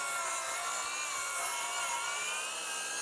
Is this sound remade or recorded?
remade